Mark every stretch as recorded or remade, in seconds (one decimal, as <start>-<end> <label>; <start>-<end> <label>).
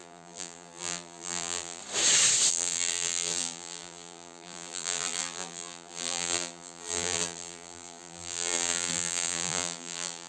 0.0-1.8 remade; 1.8-2.5 recorded; 2.5-10.3 remade